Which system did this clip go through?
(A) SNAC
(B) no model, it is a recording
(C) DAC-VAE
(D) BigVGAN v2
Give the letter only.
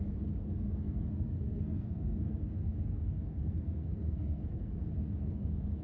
A